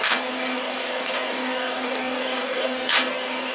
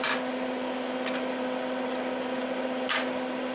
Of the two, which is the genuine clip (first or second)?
second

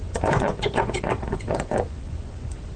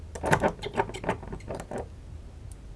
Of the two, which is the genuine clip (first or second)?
second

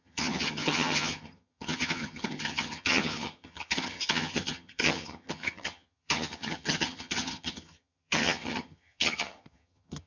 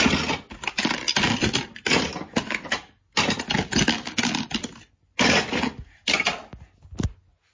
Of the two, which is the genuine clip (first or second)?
second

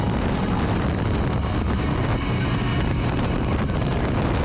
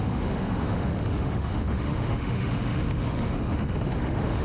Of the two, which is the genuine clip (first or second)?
first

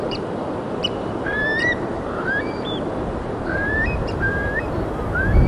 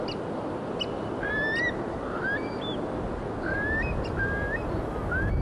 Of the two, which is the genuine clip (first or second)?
second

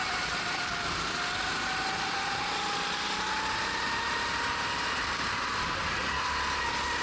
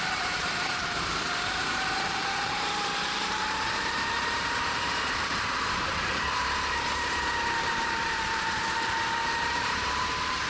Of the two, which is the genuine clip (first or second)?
first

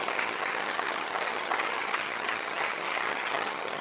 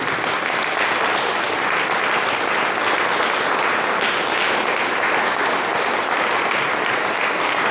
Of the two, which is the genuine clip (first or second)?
second